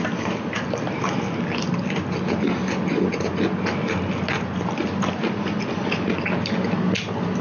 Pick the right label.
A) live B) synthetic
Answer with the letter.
A